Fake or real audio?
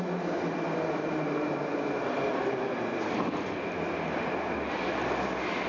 real